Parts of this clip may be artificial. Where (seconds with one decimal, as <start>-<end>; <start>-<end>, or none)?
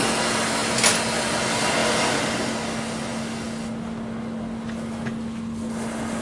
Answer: 1.8-2.5